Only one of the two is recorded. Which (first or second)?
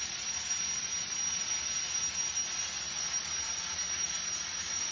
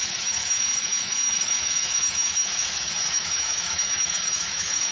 first